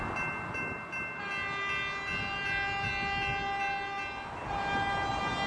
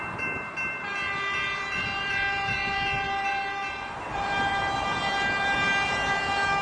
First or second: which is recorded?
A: first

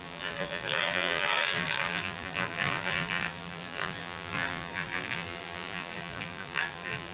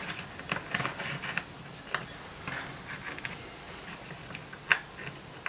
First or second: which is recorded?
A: second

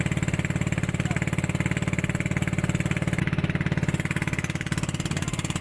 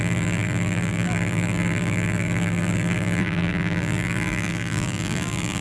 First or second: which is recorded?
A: first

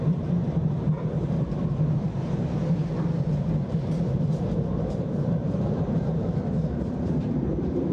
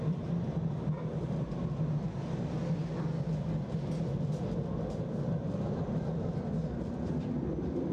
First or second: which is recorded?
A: second